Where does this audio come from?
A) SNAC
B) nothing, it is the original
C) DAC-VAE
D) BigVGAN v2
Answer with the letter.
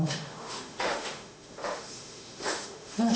C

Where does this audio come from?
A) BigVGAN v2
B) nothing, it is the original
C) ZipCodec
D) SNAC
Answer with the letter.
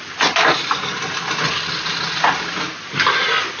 B